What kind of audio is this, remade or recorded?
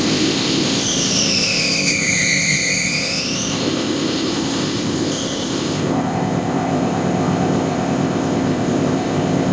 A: remade